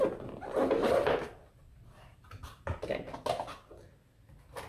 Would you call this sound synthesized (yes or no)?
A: no